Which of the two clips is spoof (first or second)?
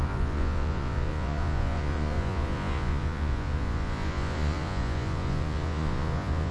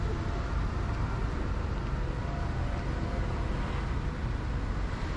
first